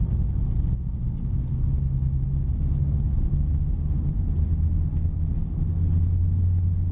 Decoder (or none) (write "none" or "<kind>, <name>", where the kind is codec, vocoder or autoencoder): none